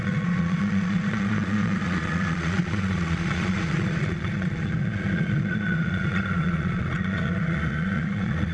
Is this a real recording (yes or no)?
no